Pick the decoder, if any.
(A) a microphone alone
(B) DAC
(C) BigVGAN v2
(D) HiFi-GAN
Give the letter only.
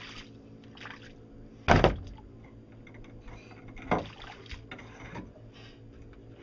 A